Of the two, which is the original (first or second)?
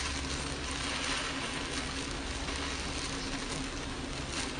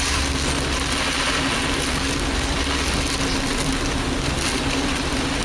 first